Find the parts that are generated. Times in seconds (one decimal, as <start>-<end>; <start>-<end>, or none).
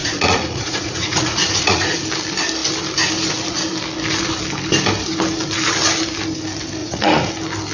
0.0-2.0; 6.8-7.3